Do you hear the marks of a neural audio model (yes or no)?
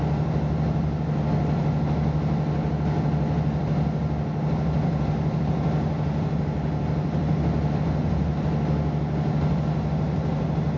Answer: no